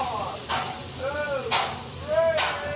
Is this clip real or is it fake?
real